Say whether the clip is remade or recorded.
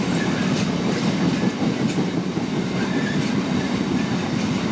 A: recorded